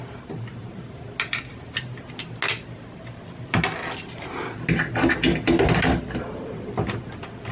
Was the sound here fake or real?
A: real